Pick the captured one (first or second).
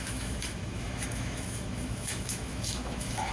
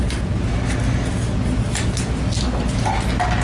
second